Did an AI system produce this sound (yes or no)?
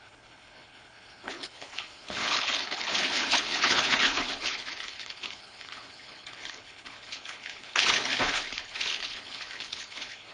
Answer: yes